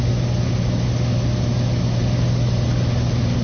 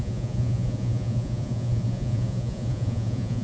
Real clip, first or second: first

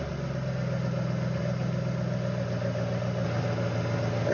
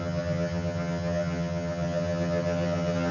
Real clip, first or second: first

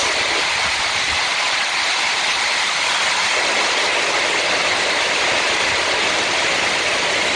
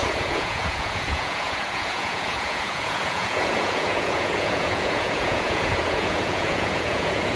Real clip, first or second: first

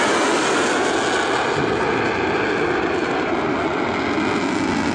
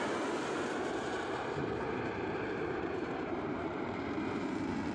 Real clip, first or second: first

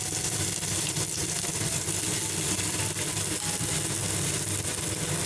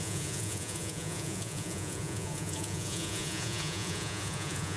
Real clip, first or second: first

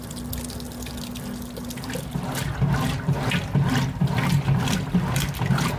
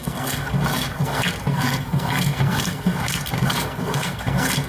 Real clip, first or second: first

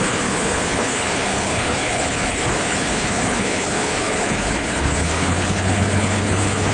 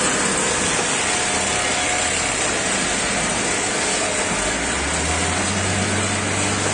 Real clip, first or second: second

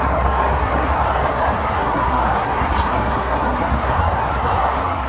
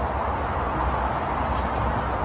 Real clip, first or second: second